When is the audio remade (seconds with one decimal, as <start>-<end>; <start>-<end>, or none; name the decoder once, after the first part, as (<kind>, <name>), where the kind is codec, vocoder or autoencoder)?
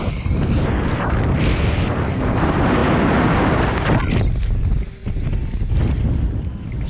none